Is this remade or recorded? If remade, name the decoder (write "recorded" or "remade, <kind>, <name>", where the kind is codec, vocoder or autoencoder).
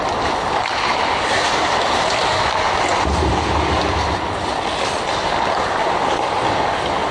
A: recorded